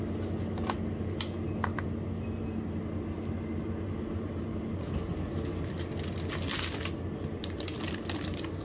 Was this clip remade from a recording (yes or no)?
no